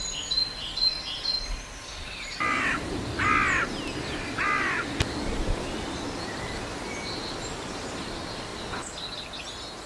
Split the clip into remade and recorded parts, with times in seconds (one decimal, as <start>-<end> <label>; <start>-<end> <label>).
0.0-8.5 remade; 8.5-9.4 recorded; 9.4-9.9 remade